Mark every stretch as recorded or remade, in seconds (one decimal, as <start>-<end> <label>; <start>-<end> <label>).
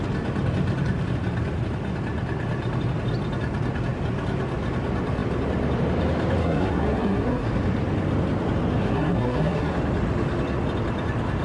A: 0.0-6.4 recorded; 6.4-7.5 remade; 7.5-8.8 recorded; 8.8-9.7 remade; 9.7-11.4 recorded